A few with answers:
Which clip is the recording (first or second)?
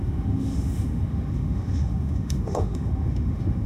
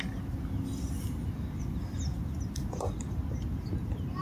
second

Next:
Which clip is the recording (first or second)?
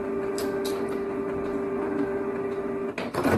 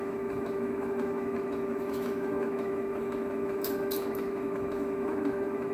first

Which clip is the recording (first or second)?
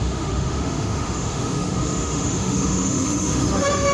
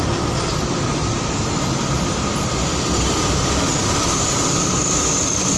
second